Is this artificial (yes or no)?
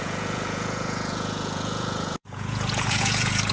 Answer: yes